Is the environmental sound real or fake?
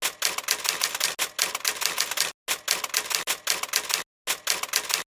real